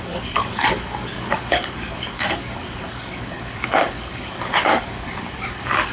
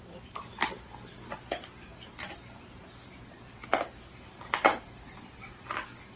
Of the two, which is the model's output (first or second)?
first